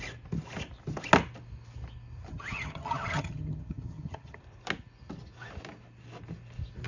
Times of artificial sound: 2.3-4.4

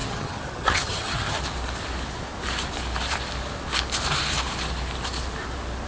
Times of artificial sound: 0.0-1.4

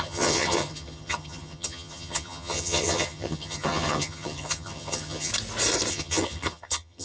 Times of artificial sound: 0.0-5.3; 5.9-7.0

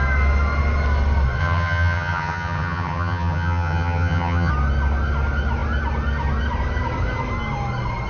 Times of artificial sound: 1.4-4.5

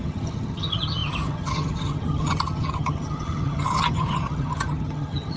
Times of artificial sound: 0.0-5.4

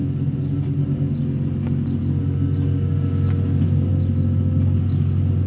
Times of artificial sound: none

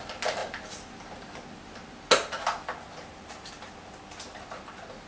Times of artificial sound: none

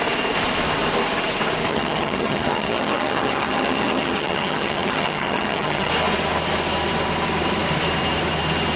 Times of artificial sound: 1.7-5.9